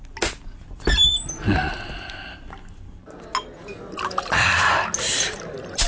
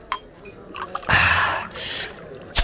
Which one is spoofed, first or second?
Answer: second